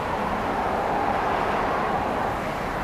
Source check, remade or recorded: recorded